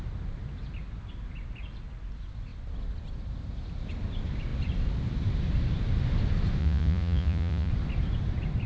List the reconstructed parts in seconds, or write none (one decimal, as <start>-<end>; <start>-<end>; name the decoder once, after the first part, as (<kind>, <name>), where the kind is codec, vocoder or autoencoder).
6.6-7.7 (vocoder, Vocos)